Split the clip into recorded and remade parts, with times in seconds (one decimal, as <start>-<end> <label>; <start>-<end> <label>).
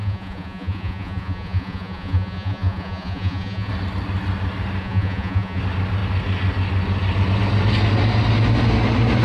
0.0-3.7 remade; 3.7-4.8 recorded; 4.8-5.6 remade; 5.6-9.2 recorded